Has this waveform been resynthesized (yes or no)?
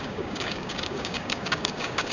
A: yes